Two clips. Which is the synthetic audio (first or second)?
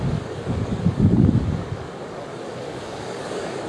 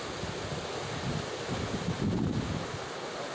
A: first